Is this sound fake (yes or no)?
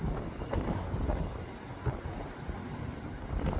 no